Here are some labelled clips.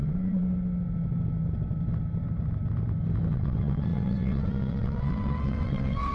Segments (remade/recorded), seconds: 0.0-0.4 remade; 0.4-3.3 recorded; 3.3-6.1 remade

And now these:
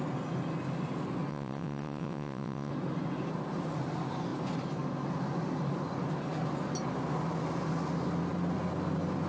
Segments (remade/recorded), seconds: 0.0-1.3 recorded; 1.3-2.7 remade; 2.7-9.3 recorded

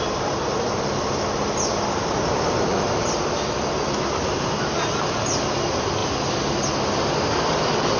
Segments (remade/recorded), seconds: 0.0-8.0 recorded